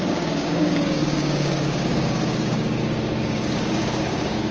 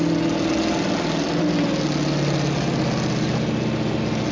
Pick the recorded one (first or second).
second